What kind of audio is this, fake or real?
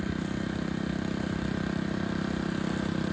real